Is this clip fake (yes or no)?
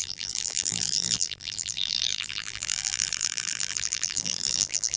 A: yes